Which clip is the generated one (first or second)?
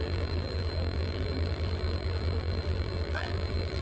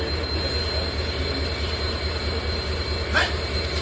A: first